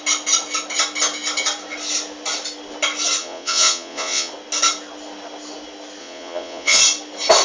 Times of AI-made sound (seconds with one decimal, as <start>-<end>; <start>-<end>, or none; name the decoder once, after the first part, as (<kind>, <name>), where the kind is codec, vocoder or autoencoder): 3.2-4.3 (vocoder, Vocos); 6.0-6.8